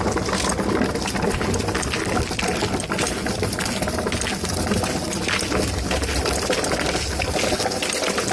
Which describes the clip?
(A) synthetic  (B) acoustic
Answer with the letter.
B